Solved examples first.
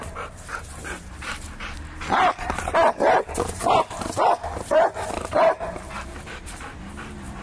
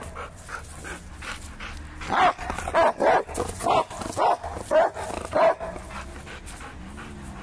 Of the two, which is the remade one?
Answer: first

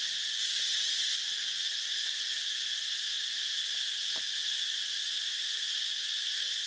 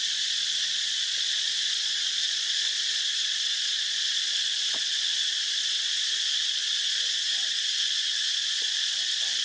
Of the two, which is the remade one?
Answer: second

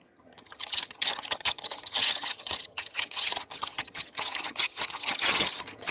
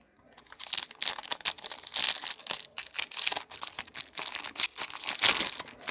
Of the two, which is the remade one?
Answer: first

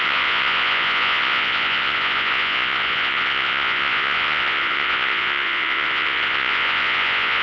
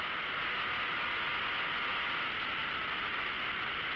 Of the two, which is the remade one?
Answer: first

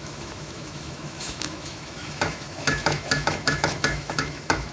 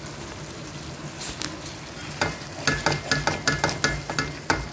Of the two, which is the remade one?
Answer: first